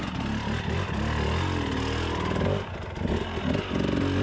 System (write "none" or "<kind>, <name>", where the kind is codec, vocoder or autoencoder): none